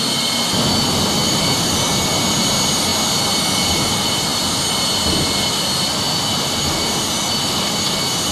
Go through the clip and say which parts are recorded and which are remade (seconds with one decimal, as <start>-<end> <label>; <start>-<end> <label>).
0.0-1.2 recorded; 1.2-1.7 remade; 1.7-8.3 recorded